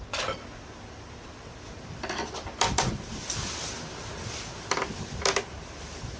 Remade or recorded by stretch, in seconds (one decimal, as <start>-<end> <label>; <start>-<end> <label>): 0.0-6.2 recorded